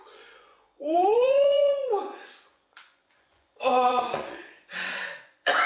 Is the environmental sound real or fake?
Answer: fake